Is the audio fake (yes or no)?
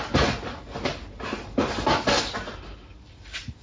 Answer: no